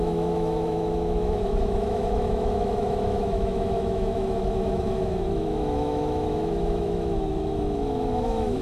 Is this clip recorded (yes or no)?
no